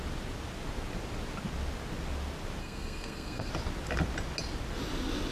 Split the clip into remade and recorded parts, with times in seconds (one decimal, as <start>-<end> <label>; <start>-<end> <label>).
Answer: 0.0-2.6 recorded; 2.6-3.5 remade; 3.5-5.3 recorded